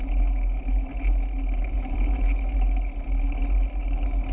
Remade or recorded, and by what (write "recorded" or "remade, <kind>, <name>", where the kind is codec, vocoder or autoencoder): recorded